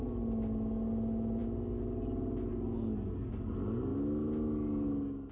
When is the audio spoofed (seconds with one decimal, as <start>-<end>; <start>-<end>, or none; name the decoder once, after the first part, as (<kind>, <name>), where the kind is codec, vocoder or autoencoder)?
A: none